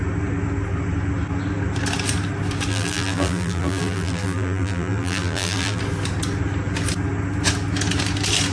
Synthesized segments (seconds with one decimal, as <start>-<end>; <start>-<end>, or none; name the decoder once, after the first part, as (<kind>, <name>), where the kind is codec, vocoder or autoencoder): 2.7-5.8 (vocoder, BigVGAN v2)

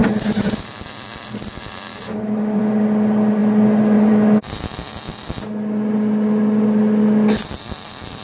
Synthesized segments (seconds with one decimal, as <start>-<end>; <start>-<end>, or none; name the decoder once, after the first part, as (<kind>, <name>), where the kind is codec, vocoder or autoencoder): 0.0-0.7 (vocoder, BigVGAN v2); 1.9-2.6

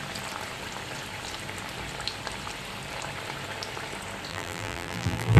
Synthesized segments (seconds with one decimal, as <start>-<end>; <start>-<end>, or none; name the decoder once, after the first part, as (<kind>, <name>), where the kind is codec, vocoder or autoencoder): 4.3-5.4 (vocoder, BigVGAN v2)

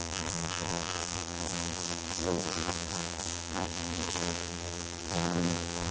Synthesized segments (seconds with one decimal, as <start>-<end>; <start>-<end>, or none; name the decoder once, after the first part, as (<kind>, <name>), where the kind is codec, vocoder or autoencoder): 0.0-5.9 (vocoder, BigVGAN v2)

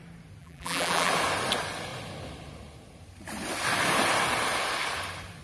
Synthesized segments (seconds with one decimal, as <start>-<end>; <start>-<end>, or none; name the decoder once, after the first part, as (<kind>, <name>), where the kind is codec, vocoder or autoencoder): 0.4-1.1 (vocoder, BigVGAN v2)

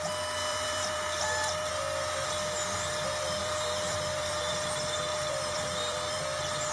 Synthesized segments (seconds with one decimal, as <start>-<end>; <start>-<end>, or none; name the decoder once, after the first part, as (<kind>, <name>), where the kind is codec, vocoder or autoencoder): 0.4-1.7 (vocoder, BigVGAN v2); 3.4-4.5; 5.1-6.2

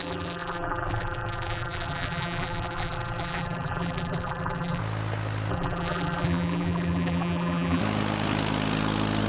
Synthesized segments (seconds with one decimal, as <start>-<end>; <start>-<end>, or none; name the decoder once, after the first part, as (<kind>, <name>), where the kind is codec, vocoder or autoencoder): 0.0-4.8 (vocoder, BigVGAN v2); 5.5-7.8

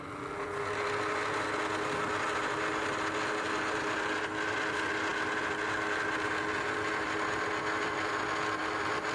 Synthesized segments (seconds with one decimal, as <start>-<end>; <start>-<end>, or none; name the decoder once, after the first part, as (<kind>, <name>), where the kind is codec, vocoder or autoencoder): none